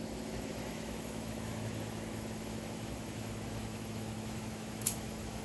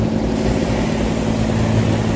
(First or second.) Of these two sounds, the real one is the second